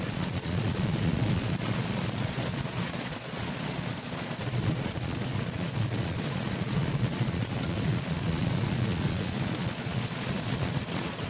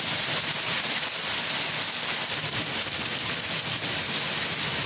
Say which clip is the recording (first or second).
second